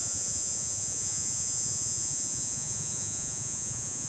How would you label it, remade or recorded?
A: remade